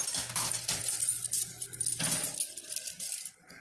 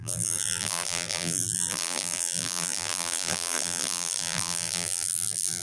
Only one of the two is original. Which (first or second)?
first